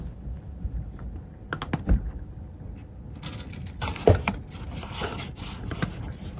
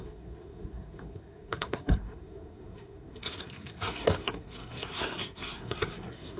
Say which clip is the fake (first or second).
second